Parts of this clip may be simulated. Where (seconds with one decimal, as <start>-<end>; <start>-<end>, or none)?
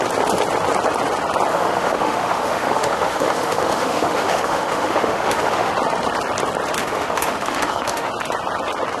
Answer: 1.5-5.7; 6.8-8.1